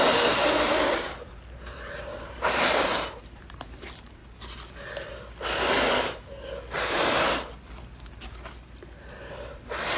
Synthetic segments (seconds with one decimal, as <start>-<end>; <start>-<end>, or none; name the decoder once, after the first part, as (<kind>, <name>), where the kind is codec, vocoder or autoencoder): 0.0-4.2 (vocoder, BigVGAN v2); 9.5-10.0